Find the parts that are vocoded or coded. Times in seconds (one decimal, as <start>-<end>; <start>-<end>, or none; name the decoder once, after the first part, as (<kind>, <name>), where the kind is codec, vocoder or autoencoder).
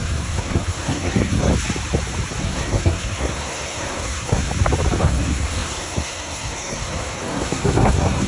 0.0-1.5 (codec, SNAC); 2.4-4.5; 5.0-8.3